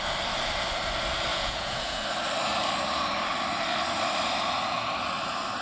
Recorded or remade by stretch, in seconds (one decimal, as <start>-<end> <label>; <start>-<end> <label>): 0.0-1.3 recorded; 1.3-2.0 remade; 2.0-5.6 recorded